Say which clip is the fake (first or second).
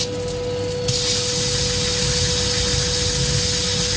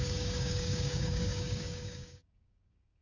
second